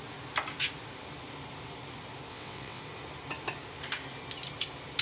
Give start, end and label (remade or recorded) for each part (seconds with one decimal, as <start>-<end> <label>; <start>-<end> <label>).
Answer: 0.0-2.3 recorded; 2.3-2.8 remade; 2.8-5.0 recorded